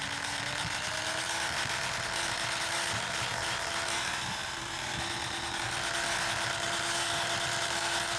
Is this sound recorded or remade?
recorded